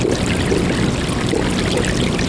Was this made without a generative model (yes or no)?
yes